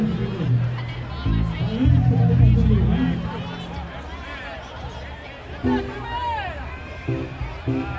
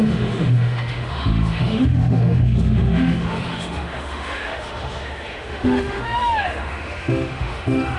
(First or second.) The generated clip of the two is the second